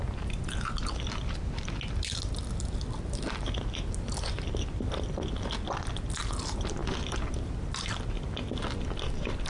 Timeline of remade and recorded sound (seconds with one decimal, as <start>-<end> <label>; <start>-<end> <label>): 0.0-9.5 recorded